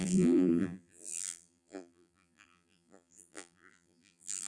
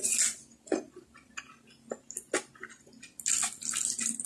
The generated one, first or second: first